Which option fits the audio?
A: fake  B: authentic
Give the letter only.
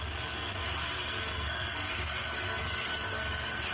A